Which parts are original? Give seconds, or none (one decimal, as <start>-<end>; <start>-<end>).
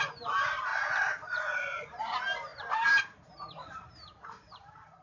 0.0-0.7; 1.8-2.5